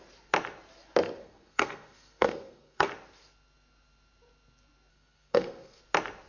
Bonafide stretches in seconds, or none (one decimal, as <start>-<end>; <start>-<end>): 0.0-1.2; 2.9-4.9; 5.8-6.3